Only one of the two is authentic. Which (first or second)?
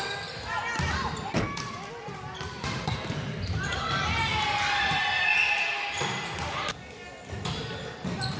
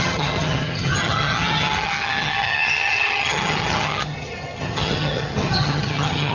first